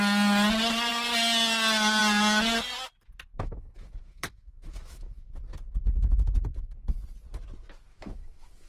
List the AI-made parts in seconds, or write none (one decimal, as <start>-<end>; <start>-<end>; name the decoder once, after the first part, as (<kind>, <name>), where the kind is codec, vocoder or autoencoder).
3.3-5.4 (autoencoder, DAC-VAE); 7.9-8.7